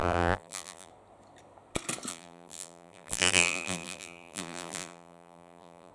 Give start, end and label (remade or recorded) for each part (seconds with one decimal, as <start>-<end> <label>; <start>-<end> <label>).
0.0-0.9 remade; 0.9-2.1 recorded; 2.1-5.9 remade